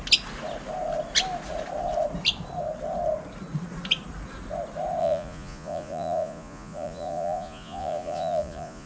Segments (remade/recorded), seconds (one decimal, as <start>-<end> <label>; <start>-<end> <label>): 0.0-5.0 recorded; 5.0-8.9 remade